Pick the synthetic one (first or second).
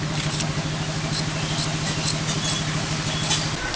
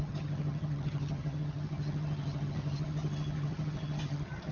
second